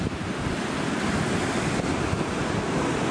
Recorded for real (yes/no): yes